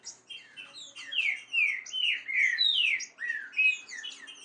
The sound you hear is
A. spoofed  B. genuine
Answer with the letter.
B